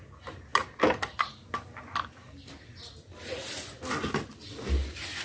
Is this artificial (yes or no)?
no